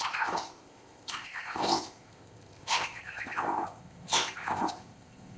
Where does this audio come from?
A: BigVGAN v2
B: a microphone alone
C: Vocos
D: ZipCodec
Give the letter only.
D